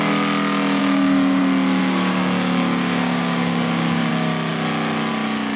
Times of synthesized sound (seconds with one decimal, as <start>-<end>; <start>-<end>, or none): 0.8-1.4; 1.8-4.1